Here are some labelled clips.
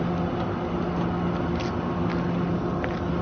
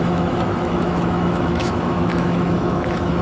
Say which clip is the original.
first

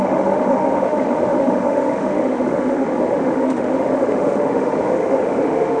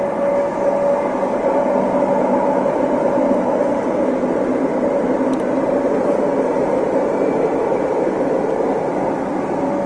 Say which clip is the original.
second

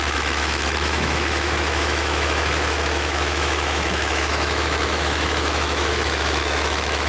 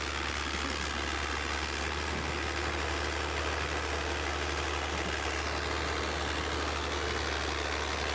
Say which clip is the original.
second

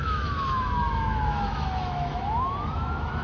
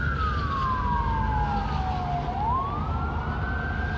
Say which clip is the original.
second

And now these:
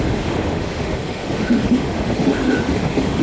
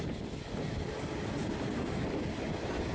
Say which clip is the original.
second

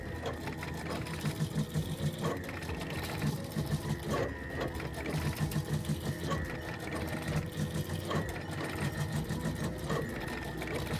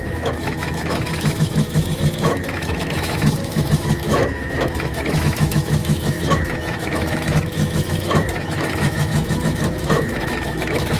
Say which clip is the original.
first